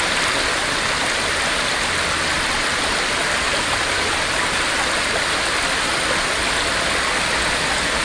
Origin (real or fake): real